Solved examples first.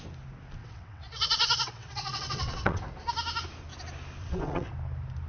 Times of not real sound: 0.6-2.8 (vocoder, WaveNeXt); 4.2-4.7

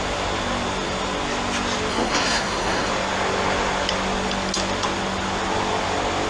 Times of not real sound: 1.9-2.9 (codec, SNAC)